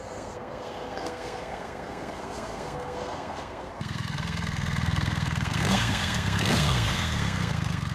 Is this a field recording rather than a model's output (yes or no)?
no